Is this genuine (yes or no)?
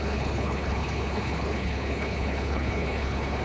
no